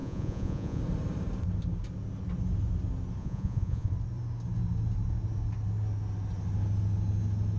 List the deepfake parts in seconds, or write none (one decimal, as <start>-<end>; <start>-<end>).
0.0-0.8; 3.2-3.9